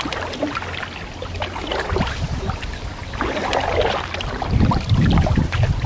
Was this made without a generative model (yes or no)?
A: yes